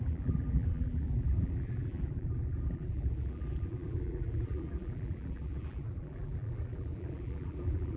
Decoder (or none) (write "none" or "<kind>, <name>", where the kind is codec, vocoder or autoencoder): vocoder, BigVGAN v2